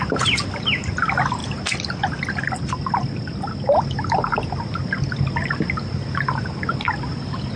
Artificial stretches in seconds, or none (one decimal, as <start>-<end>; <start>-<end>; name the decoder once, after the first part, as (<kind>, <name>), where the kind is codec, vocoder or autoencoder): none